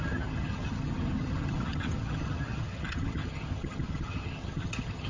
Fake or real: fake